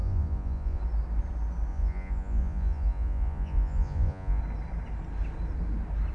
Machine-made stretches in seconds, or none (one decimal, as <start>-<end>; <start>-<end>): 0.0-0.8; 1.7-4.4

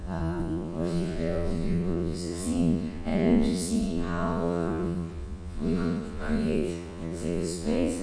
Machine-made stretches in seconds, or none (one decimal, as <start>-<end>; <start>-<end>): 0.0-8.0

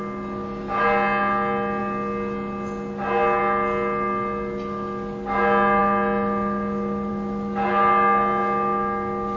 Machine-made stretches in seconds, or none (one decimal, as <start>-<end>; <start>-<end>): none

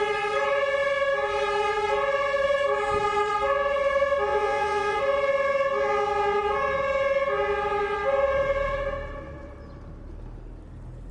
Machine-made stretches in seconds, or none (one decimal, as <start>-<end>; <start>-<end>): 4.3-5.0